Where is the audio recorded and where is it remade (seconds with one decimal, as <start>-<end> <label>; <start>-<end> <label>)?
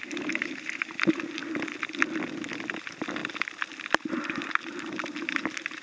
0.0-1.4 remade; 1.4-2.8 recorded; 2.8-3.2 remade; 3.2-4.1 recorded; 4.1-5.8 remade